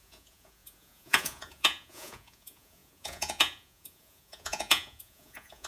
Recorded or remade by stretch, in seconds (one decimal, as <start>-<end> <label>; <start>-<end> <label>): 0.0-5.7 remade